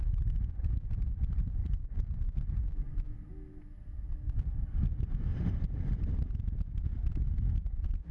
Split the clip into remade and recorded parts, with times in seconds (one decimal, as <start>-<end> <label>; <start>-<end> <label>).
0.0-1.6 recorded; 1.6-2.3 remade; 2.3-5.3 recorded; 5.3-6.4 remade; 6.4-8.1 recorded